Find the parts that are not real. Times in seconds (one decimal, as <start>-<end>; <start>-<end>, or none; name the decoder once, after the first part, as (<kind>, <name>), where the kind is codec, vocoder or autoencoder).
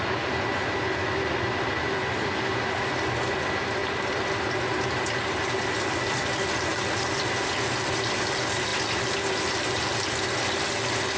none